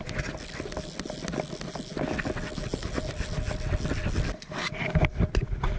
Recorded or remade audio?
recorded